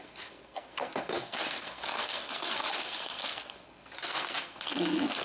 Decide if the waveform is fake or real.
fake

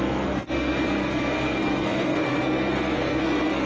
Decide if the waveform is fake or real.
fake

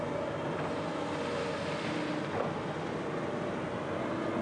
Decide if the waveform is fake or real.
real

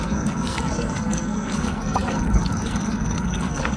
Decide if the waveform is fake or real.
fake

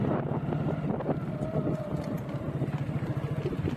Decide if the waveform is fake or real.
real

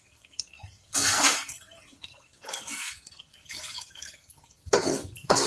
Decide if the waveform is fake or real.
fake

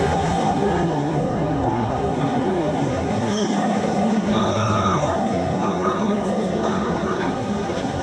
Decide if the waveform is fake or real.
fake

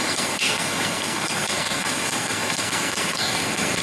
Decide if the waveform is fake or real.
fake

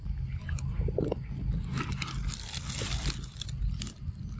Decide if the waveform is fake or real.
real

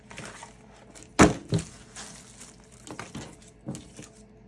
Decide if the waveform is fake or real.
real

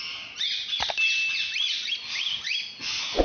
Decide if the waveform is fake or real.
real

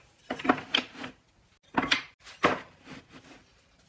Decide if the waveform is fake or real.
real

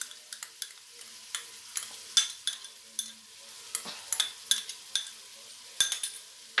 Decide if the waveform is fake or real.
real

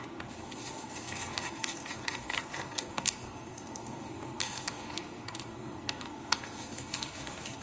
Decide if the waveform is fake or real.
fake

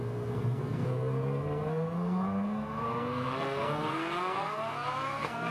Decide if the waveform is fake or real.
fake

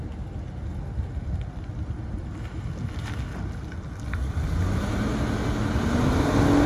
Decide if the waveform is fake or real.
real